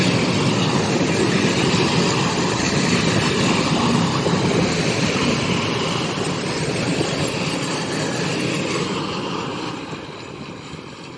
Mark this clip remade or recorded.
recorded